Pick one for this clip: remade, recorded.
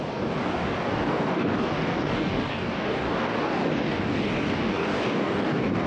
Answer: remade